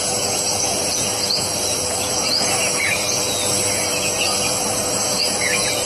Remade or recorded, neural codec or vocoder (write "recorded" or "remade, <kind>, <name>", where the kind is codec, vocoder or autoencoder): remade, vocoder, Vocos